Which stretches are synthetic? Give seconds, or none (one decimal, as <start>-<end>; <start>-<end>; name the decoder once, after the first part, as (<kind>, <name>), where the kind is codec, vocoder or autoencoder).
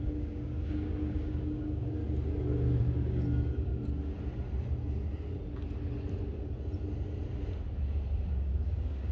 0.0-2.0 (codec, DAC); 2.8-3.7; 8.3-9.1